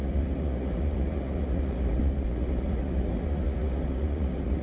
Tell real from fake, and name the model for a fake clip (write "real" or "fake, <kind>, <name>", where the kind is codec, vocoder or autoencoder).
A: fake, vocoder, Vocos